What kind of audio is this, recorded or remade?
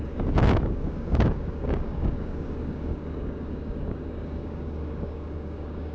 remade